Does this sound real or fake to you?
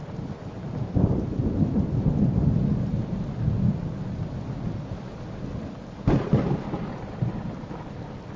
real